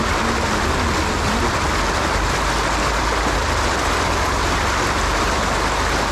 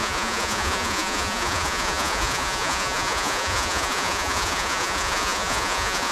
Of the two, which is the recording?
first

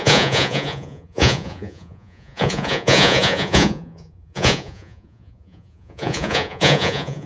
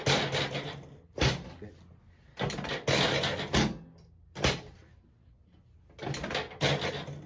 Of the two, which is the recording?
second